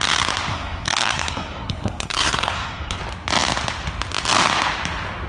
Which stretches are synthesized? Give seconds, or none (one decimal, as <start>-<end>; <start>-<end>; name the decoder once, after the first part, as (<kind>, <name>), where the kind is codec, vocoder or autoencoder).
0.5-3.0 (codec, SNAC)

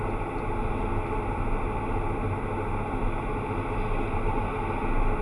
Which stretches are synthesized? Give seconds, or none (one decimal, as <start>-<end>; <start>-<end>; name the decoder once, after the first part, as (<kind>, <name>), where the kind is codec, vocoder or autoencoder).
none

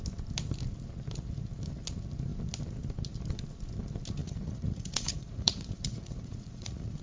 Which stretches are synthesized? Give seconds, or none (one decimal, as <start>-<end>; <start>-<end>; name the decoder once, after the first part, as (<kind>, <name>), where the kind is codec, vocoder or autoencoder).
4.2-7.0 (vocoder, Vocos)

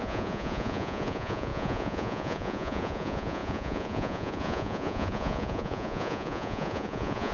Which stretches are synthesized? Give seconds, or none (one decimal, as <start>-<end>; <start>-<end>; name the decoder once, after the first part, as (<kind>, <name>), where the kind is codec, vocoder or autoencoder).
0.0-7.3 (vocoder, Vocos)